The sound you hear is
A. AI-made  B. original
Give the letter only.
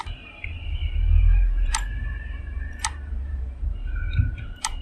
A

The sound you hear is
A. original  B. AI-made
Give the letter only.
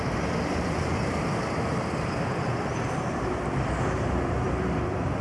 B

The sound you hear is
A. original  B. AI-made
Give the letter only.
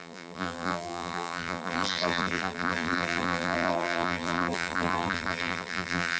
B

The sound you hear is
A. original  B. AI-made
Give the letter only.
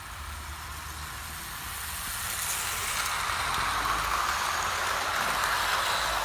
A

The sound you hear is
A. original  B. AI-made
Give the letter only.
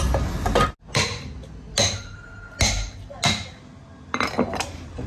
A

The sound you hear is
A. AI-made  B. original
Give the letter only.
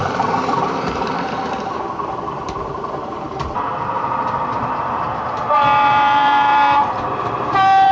A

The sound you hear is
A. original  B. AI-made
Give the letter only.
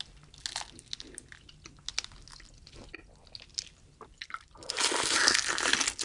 A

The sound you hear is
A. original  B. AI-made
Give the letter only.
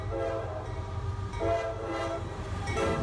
B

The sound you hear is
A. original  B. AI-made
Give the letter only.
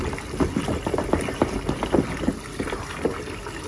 A